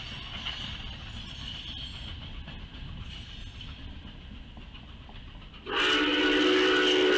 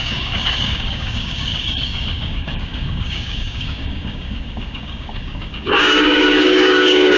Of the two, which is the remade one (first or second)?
second